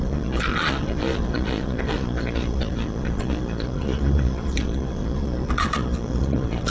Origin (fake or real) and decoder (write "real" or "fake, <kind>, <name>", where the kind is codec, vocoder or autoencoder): fake, vocoder, Vocos